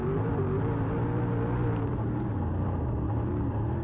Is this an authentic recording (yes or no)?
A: yes